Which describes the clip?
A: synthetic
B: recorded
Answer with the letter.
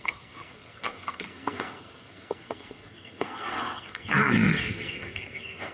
A